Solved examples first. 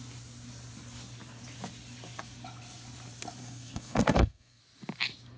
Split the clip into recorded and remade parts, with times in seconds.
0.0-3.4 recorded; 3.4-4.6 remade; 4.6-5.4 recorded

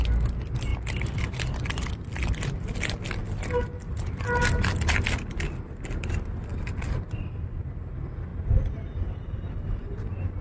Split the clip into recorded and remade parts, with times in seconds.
0.0-10.4 recorded